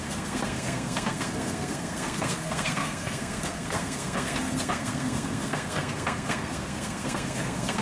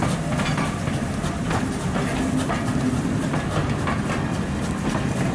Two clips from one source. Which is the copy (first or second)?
first